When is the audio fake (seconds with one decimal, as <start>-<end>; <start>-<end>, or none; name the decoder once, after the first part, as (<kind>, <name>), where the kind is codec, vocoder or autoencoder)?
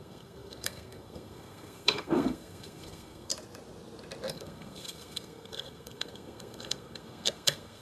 0.0-3.3 (codec, SNAC); 4.3-7.8